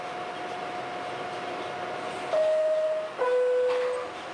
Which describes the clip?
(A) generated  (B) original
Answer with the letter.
B